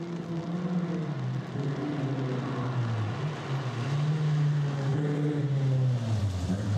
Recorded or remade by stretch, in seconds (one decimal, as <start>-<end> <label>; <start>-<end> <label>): 0.0-6.8 recorded